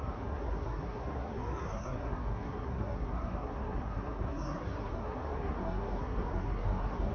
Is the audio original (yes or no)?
no